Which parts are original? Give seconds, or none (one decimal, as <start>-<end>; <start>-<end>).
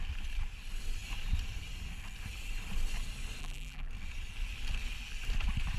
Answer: 0.0-3.4; 3.9-5.8